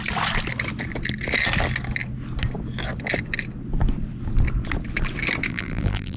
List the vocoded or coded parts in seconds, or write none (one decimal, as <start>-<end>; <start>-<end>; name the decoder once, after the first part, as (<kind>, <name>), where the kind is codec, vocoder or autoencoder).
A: 5.5-6.2 (vocoder, BigVGAN v2)